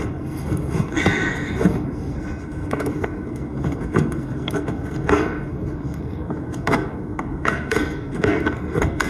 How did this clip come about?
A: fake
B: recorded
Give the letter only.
A